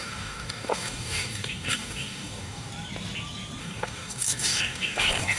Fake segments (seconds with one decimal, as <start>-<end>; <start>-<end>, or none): 0.0-2.7; 3.6-5.4